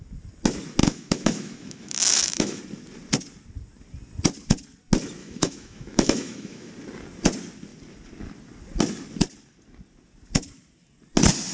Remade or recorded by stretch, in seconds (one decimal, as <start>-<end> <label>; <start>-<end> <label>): 0.0-0.8 recorded; 0.8-2.6 remade; 2.6-5.2 recorded; 5.2-6.7 remade; 6.7-11.5 recorded